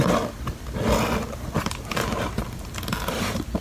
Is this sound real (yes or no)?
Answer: yes